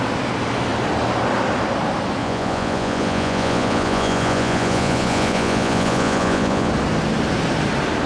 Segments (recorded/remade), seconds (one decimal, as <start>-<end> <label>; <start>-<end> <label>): 0.0-2.2 recorded; 2.2-6.7 remade; 6.7-8.1 recorded